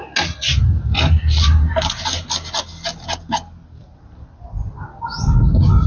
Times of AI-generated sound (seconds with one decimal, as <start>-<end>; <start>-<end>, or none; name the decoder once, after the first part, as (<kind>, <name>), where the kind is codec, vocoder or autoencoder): none